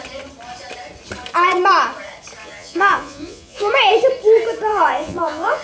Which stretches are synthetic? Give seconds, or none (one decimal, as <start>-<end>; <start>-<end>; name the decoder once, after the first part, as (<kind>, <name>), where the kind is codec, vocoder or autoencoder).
2.4-3.7 (vocoder, Vocos); 4.7-5.6